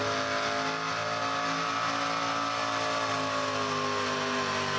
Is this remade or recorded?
recorded